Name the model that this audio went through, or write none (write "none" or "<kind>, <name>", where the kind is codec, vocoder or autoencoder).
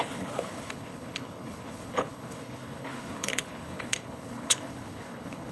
codec, HILCodec